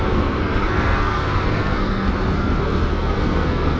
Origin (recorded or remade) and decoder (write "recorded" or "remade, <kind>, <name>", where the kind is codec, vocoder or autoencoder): remade, codec, SNAC